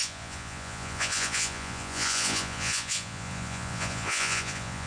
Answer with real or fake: fake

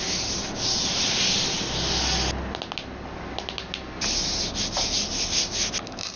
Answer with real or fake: real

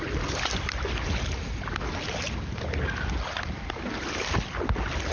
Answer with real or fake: real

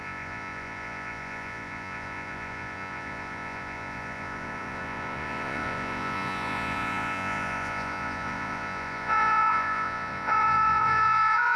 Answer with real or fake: fake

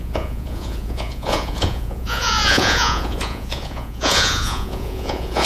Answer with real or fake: fake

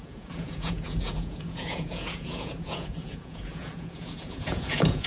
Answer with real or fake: fake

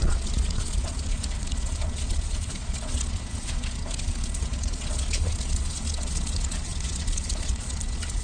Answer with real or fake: fake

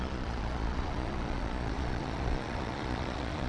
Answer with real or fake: fake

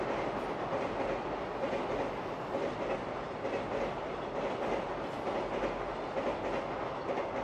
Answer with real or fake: real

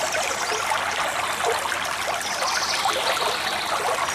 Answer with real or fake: real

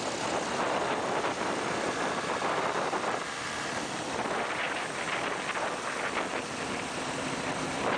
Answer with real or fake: real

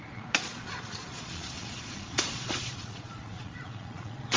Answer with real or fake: fake